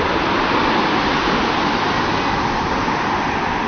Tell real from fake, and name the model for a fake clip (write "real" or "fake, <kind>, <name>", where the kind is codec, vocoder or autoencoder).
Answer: real